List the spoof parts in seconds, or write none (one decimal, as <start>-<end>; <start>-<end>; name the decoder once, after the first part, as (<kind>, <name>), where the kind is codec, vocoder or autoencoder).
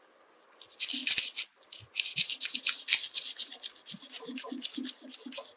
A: none